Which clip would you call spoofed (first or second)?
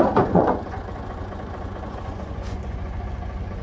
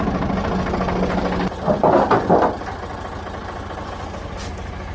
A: first